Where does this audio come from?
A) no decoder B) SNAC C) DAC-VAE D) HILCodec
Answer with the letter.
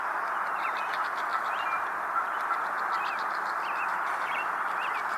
A